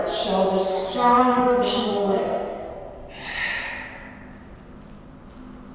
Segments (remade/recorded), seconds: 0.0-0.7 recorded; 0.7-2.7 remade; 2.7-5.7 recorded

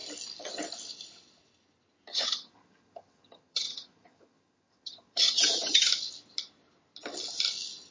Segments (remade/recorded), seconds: 0.0-2.1 recorded; 2.1-5.9 remade; 5.9-7.9 recorded

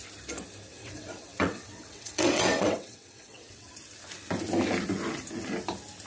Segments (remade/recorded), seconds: 0.0-0.7 recorded; 0.7-3.7 remade; 3.7-6.1 recorded

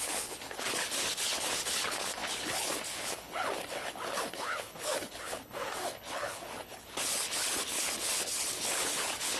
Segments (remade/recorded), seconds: 0.0-9.4 remade

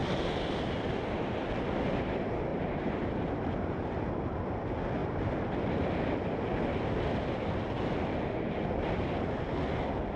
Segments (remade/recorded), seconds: 0.0-2.5 recorded; 2.5-4.1 remade; 4.1-10.2 recorded

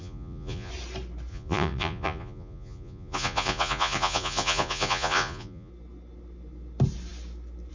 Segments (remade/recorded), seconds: 0.0-0.7 remade; 0.7-1.3 recorded; 1.3-5.7 remade; 5.7-7.7 recorded